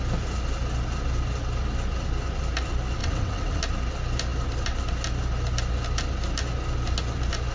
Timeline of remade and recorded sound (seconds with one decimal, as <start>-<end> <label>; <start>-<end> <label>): 0.0-3.0 recorded; 3.0-3.6 remade; 3.6-7.5 recorded